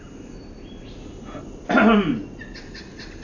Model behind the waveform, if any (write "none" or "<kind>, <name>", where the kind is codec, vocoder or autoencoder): none